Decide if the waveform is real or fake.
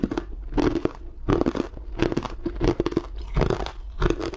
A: real